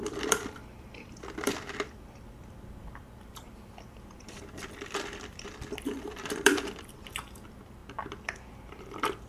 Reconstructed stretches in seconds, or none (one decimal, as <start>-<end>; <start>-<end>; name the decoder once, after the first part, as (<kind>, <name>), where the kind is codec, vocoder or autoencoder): 0.0-7.8 (vocoder, BigVGAN v2); 8.5-9.3